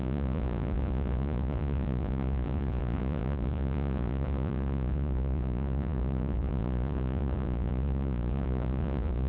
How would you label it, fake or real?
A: fake